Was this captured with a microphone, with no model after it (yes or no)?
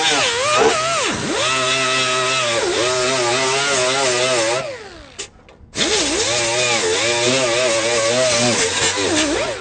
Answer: yes